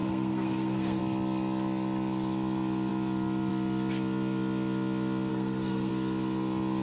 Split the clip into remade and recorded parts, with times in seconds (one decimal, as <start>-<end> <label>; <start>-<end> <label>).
0.0-1.0 remade; 1.0-5.3 recorded; 5.3-5.9 remade; 5.9-6.8 recorded